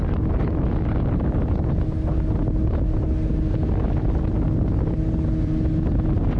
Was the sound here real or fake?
real